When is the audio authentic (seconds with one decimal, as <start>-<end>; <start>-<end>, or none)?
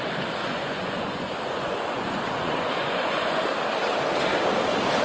0.0-0.4; 3.4-5.0